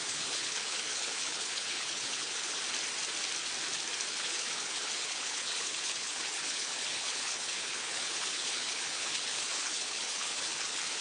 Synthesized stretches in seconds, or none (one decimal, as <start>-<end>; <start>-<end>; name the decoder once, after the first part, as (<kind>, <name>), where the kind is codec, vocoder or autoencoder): 0.0-2.6 (codec, HILCodec); 4.1-11.0